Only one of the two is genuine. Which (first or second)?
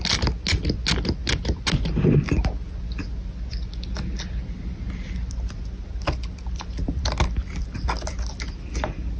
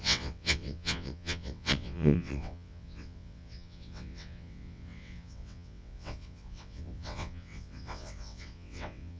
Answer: first